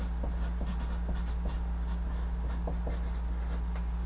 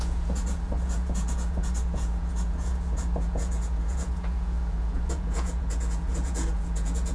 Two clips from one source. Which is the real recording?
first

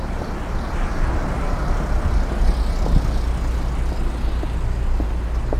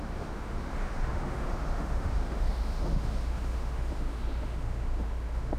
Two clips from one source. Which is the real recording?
first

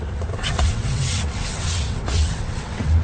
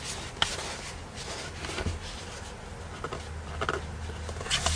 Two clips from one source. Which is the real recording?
second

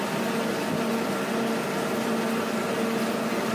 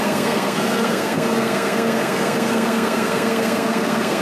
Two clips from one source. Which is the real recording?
first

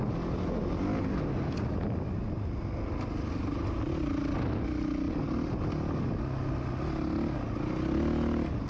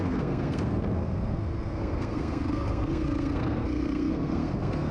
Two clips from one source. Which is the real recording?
first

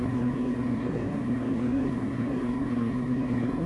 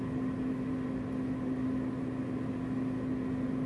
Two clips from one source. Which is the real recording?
second